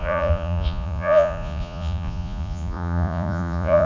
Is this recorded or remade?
remade